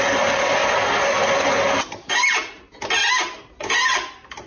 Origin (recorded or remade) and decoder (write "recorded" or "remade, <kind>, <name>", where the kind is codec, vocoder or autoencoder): recorded